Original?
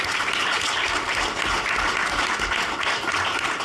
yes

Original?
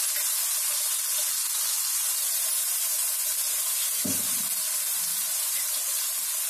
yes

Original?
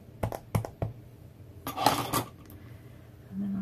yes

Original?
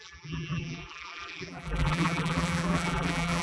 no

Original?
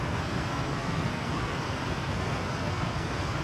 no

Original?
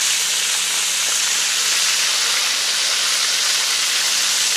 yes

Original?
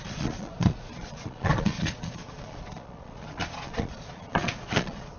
no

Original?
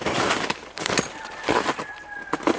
yes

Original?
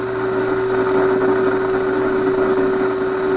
yes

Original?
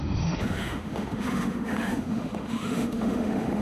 no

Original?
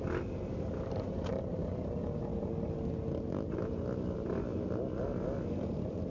yes